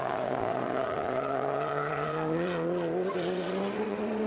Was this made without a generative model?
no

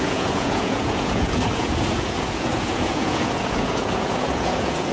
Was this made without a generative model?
no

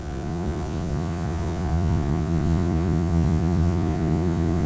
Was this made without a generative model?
no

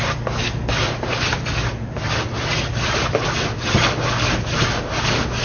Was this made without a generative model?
yes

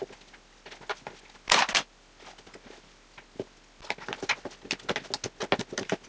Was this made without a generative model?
yes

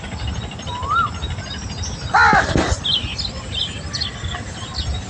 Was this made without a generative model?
yes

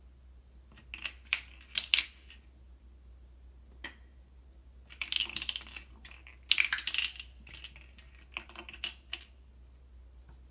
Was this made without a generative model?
yes